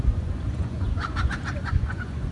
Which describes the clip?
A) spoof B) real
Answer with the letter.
A